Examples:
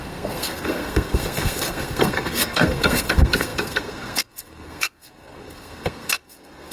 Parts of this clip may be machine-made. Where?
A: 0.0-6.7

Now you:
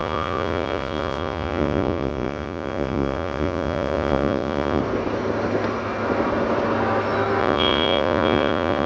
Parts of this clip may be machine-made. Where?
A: 0.0-4.8; 7.4-8.9

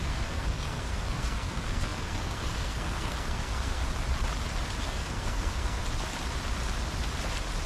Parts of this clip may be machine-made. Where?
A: 0.0-3.8; 4.8-5.8

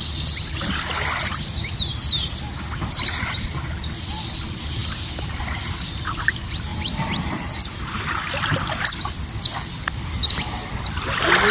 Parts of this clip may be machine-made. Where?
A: 6.7-7.6

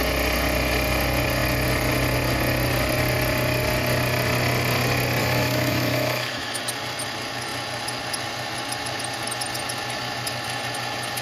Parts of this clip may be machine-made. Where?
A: 5.2-6.6